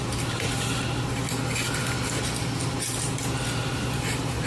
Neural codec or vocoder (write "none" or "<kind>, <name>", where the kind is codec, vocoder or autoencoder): none